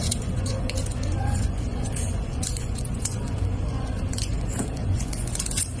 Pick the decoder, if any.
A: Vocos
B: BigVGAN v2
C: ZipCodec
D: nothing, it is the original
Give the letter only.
A